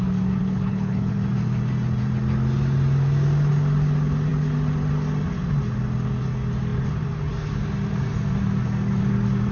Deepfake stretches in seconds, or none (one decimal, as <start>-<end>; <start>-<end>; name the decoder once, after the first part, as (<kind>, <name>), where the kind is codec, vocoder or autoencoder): 0.4-1.1 (codec, HILCodec)